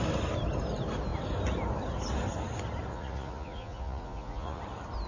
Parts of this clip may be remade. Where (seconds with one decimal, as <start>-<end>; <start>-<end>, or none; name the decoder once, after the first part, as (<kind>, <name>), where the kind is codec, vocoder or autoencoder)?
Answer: 2.9-4.6 (vocoder, Vocos)